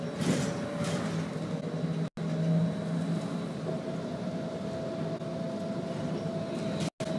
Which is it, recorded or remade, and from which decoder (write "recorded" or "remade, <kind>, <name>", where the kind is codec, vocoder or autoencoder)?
recorded